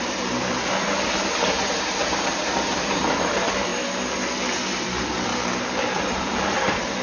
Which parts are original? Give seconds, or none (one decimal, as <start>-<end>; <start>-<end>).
3.7-4.8